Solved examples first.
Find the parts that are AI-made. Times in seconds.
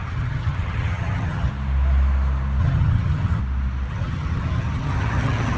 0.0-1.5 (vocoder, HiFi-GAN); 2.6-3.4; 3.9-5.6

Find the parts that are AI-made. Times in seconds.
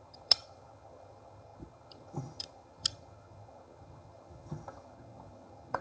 0.0-5.8 (vocoder, HiFi-GAN)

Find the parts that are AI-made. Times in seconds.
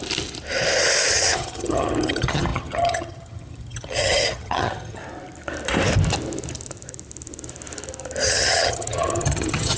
1.1-5.0 (vocoder, HiFi-GAN); 8.2-9.8